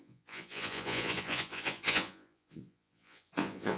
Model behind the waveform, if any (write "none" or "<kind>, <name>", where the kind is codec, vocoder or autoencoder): vocoder, Vocos